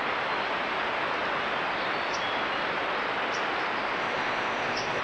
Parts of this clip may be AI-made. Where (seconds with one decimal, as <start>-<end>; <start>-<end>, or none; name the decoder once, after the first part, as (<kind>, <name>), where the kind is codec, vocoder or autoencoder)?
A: 4.0-5.0 (codec, ZipCodec)